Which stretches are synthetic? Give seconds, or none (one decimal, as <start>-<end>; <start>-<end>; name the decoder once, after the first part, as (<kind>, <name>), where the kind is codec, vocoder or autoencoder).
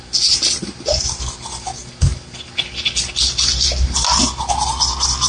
none